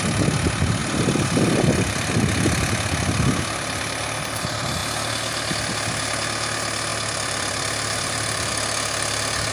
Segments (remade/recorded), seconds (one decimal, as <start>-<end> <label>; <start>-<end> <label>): 0.0-0.8 recorded; 0.8-2.1 remade; 2.1-6.9 recorded; 6.9-8.5 remade; 8.5-9.5 recorded